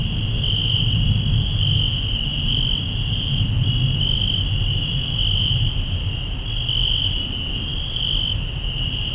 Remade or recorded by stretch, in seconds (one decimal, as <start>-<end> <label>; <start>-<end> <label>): 0.0-9.1 recorded